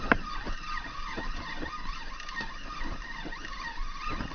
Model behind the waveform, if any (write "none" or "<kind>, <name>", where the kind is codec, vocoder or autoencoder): none